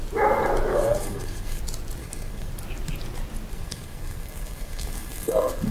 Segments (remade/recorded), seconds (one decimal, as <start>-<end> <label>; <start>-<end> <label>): 0.0-0.7 recorded; 0.7-1.6 remade; 1.6-2.0 recorded; 2.0-2.5 remade; 2.5-3.5 recorded; 3.5-5.7 remade